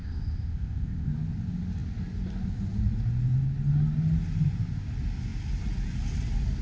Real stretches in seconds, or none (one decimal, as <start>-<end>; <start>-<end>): 1.1-6.6